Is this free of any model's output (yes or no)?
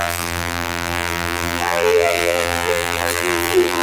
no